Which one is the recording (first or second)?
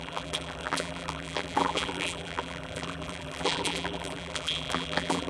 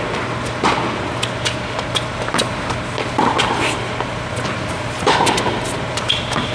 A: second